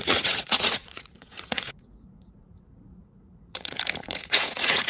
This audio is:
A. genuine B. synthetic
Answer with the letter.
B